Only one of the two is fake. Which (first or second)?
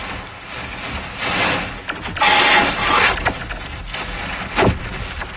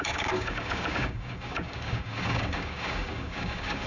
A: second